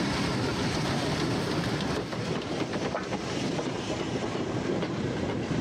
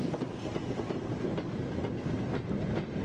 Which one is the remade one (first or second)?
first